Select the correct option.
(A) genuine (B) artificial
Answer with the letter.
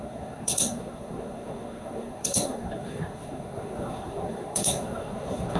B